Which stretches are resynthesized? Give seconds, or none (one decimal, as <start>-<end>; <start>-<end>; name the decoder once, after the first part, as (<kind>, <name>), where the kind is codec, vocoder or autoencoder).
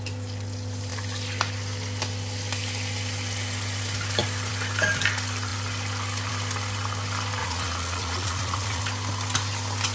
7.4-8.8 (vocoder, Vocos)